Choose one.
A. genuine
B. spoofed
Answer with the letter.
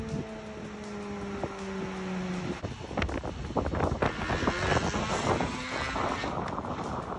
A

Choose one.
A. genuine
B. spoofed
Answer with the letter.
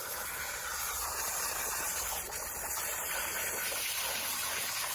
B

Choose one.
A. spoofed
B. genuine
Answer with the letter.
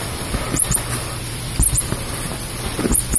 A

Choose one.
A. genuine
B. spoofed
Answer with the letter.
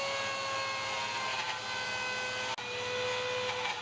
A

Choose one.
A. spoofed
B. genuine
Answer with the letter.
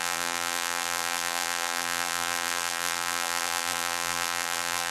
A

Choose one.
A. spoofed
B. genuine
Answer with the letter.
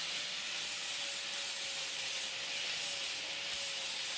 B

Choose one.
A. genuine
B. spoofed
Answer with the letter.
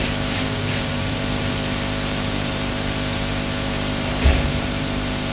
B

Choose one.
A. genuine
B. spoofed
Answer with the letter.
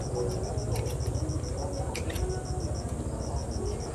A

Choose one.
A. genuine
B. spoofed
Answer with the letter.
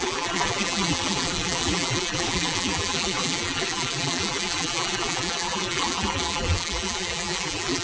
B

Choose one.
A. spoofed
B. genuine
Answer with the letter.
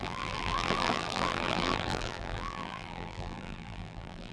A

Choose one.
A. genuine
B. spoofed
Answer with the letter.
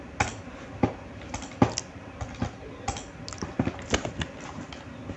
A